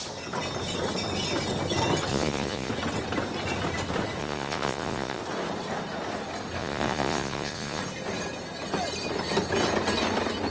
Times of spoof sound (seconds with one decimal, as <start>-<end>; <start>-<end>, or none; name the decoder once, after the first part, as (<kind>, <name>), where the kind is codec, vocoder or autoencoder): 2.1-2.7 (vocoder, Vocos); 4.2-5.2; 6.6-7.8